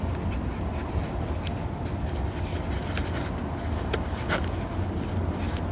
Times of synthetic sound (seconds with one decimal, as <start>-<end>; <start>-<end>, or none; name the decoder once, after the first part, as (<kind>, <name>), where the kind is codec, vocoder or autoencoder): 0.0-2.8 (vocoder, BigVGAN v2)